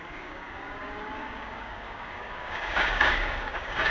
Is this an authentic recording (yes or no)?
no